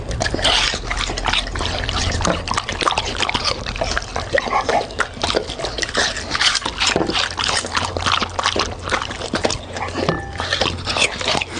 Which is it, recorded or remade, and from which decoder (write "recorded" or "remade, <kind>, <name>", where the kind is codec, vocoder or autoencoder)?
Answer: recorded